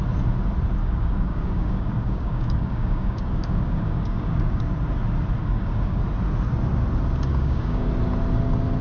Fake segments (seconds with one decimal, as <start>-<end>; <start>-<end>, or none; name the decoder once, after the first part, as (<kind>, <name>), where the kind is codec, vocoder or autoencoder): 0.8-4.6 (codec, DAC); 5.4-6.0; 7.3-7.9